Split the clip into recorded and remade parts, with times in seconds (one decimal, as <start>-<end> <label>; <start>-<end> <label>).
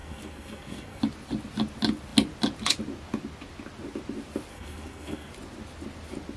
0.0-1.0 remade; 1.0-4.5 recorded; 4.5-5.3 remade; 5.3-6.4 recorded